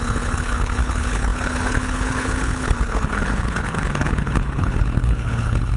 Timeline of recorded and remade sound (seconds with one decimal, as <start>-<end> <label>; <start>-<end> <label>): 0.0-5.8 remade